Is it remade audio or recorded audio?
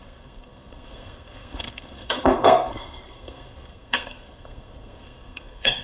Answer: remade